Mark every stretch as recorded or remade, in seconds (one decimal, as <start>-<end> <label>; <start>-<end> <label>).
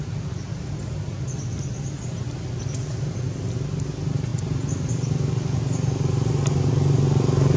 0.0-7.6 recorded